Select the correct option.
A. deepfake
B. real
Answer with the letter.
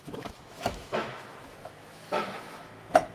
A